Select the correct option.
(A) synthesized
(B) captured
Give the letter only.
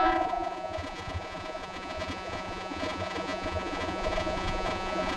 A